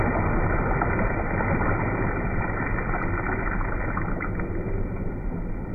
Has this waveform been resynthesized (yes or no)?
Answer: no